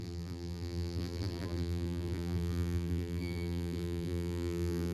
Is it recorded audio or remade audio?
remade